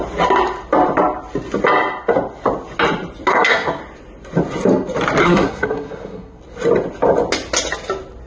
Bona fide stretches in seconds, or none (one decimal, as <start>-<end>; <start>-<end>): 0.0-3.3; 3.8-5.2; 6.4-8.3

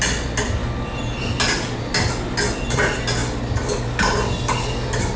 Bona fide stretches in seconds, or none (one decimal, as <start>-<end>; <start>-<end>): 0.0-5.2

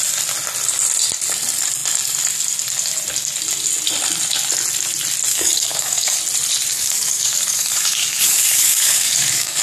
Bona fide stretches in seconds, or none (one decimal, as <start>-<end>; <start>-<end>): 0.0-5.3; 6.2-6.7